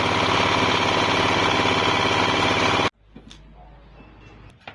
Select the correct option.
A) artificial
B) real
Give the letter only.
B